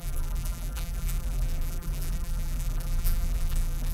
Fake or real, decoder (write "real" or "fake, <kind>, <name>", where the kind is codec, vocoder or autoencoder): fake, vocoder, BigVGAN v2